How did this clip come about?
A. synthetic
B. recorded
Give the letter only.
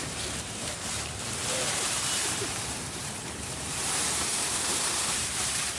A